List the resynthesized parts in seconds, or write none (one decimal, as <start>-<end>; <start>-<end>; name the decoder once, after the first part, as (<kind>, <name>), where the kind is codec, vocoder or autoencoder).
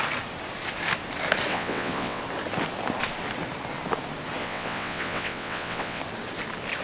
1.5-2.2 (vocoder, WaveNeXt); 4.4-6.0